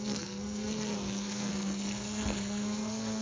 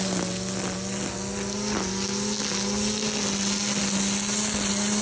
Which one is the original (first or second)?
second